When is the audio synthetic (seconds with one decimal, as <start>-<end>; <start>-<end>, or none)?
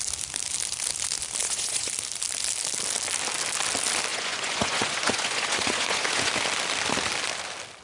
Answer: 1.4-1.9; 4.1-6.3